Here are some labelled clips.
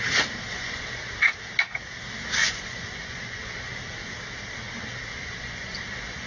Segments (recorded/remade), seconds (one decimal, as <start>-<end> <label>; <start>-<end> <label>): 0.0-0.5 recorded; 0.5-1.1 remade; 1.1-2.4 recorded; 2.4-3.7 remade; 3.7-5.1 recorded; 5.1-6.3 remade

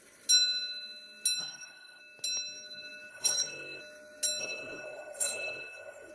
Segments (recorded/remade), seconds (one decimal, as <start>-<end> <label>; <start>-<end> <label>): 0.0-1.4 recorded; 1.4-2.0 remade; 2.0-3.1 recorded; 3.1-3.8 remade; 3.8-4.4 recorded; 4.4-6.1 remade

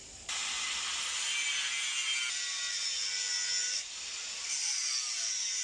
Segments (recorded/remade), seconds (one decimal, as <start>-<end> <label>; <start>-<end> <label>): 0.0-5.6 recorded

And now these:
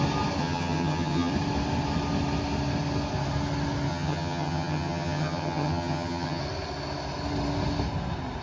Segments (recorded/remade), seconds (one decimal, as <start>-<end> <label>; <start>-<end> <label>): 0.0-0.4 recorded; 0.4-1.3 remade; 1.3-3.9 recorded; 3.9-6.4 remade; 6.4-8.4 recorded

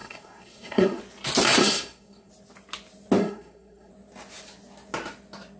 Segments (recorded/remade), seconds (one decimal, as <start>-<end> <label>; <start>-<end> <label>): 0.0-1.0 remade; 1.0-1.6 recorded; 1.6-2.3 remade; 2.3-3.2 recorded; 3.2-3.9 remade; 3.9-5.6 recorded